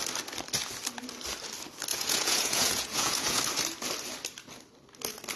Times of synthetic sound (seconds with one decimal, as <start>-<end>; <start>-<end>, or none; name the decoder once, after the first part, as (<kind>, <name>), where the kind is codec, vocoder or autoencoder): 1.9-3.4 (vocoder, Vocos)